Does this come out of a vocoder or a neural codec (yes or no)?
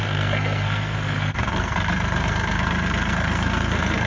yes